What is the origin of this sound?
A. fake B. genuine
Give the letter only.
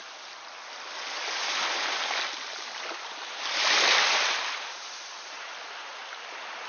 B